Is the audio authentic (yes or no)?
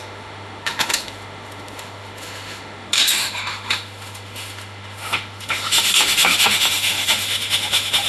no